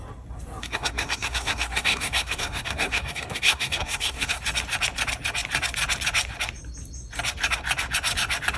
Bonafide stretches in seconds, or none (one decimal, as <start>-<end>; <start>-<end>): 0.0-0.6; 4.4-8.6